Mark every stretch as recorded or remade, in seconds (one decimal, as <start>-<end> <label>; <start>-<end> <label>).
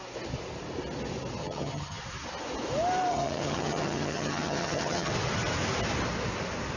0.0-1.4 recorded; 1.4-2.0 remade; 2.0-3.1 recorded; 3.1-5.1 remade; 5.1-6.8 recorded